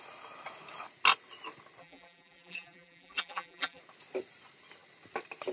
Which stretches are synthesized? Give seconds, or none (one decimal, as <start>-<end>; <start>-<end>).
1.8-3.8